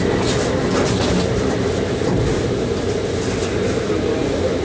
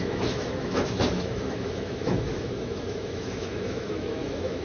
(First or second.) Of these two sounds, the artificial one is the second